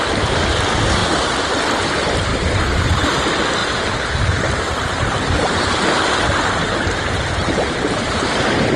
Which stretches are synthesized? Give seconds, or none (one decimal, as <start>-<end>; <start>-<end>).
3.6-8.2